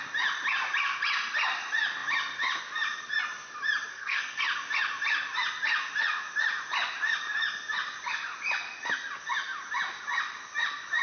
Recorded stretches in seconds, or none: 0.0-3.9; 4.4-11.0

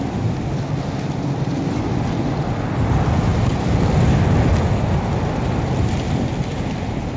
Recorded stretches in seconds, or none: 0.0-7.2

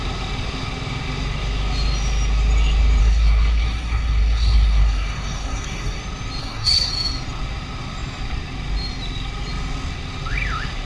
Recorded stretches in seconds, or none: 0.0-3.0; 6.0-6.4; 6.9-10.9

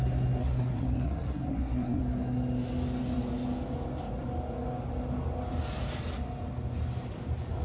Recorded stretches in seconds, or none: 0.0-0.4; 2.0-7.6

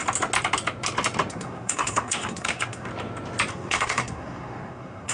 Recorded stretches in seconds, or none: 0.0-1.3; 2.9-3.5

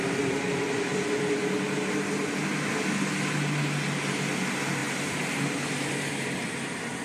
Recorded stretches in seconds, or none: 0.0-7.0

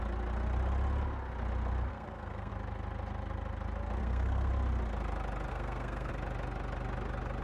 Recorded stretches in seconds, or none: 0.0-1.9; 2.5-4.0; 4.5-5.5; 6.1-7.4

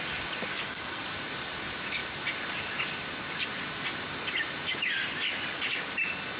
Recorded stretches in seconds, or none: 0.0-0.5; 1.0-6.4